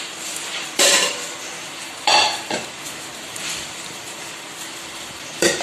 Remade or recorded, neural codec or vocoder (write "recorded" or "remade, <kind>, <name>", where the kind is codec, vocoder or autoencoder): remade, vocoder, BigVGAN v2